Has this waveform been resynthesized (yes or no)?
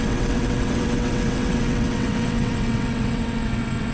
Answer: yes